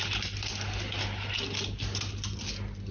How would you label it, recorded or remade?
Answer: recorded